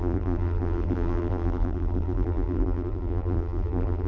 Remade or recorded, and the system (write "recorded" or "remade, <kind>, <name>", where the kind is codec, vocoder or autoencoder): remade, vocoder, BigVGAN v2